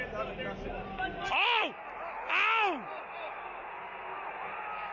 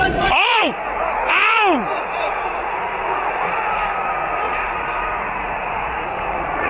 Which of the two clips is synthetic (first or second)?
second